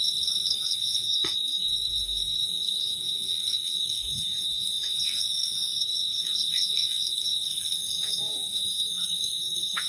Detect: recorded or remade remade